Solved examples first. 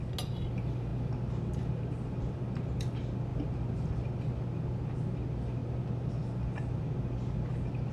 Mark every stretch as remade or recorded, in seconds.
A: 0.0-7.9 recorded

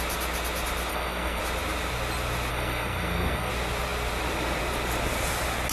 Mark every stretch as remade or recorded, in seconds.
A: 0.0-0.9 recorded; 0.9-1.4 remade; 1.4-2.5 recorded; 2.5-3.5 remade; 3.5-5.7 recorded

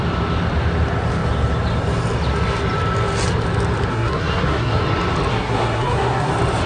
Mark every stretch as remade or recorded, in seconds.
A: 0.0-3.9 recorded; 3.9-4.8 remade; 4.8-5.3 recorded; 5.3-6.3 remade; 6.3-6.7 recorded

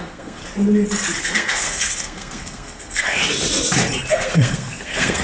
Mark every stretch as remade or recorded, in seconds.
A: 0.0-0.4 remade; 0.4-1.2 recorded; 1.2-3.2 remade; 3.2-4.1 recorded; 4.1-5.2 remade